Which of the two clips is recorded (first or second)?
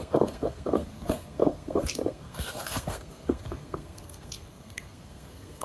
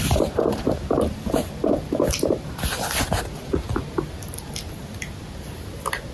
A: second